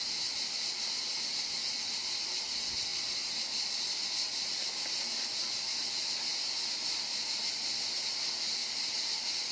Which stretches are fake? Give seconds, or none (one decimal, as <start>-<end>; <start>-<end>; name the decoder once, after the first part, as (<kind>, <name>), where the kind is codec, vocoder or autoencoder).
none